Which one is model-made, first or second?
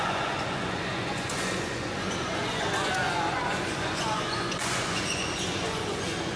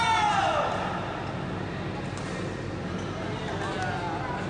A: first